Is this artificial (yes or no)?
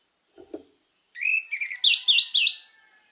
no